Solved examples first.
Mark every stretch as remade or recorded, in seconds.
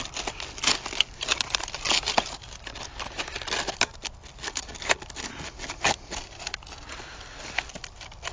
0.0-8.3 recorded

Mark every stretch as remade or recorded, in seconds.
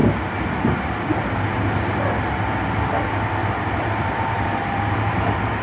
0.0-3.4 recorded; 3.4-5.6 remade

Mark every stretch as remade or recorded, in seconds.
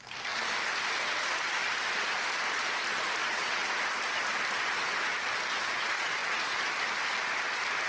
0.0-3.2 recorded; 3.2-3.7 remade; 3.7-7.9 recorded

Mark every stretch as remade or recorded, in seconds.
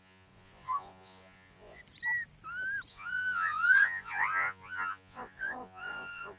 0.0-1.8 remade; 1.8-2.9 recorded; 2.9-6.4 remade